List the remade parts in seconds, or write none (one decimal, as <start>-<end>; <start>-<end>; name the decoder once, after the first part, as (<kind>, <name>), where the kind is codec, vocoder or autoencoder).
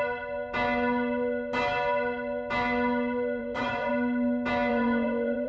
3.4-3.9 (vocoder, Vocos); 4.7-5.5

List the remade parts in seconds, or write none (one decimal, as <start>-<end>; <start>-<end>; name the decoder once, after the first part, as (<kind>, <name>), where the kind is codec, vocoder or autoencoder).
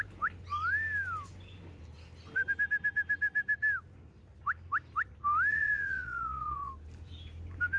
5.5-6.7 (vocoder, Vocos)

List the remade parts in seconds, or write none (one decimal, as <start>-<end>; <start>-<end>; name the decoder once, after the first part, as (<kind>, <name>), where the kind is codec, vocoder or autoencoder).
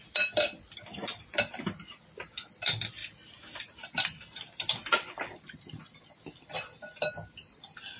none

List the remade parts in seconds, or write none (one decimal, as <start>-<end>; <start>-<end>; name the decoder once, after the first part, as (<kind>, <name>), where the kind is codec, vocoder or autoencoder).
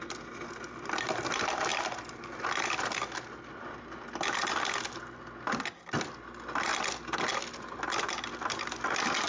none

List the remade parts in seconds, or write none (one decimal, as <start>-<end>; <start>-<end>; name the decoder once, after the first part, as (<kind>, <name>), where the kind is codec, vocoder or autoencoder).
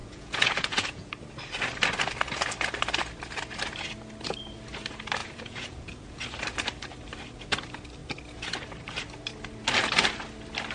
0.0-1.1 (vocoder, Vocos); 5.2-6.2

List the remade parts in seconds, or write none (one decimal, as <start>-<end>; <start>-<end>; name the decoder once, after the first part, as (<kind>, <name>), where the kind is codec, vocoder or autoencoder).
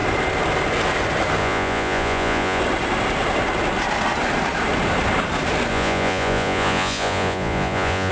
1.4-2.6 (vocoder, Vocos); 5.7-8.1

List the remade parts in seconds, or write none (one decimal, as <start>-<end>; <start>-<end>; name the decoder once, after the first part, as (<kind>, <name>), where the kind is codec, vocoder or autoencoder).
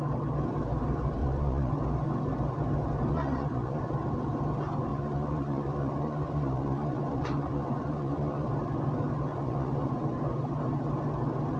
1.2-1.7 (vocoder, Vocos); 3.1-3.8; 4.9-8.5; 9.3-9.9